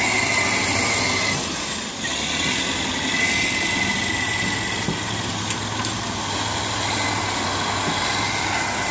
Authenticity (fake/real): real